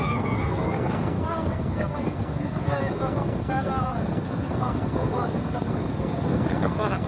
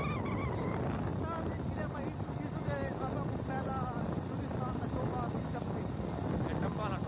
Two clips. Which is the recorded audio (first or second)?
second